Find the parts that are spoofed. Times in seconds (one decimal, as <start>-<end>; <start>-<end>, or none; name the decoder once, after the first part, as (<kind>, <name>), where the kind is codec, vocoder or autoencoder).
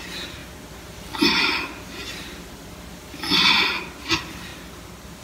none